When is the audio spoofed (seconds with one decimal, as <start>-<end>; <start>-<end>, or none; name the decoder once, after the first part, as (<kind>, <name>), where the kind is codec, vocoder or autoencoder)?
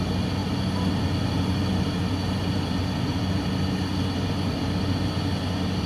none